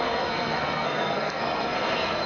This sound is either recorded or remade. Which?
remade